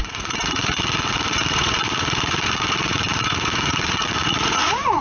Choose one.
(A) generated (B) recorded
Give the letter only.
A